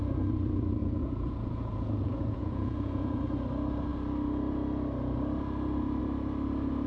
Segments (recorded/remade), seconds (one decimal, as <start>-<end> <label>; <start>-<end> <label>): 0.0-0.8 recorded; 0.8-3.2 remade; 3.2-6.9 recorded